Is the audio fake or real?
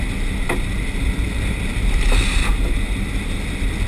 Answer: real